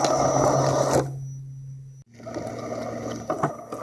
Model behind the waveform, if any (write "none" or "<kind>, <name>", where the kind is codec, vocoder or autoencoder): none